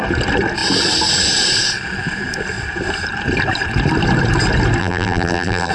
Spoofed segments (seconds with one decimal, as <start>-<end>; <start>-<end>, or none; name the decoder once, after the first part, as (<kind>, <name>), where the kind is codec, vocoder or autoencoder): 4.8-5.7 (vocoder, BigVGAN v2)